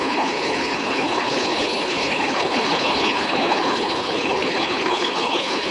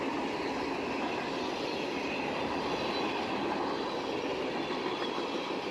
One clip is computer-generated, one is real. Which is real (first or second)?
second